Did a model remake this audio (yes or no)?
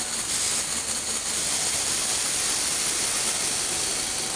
no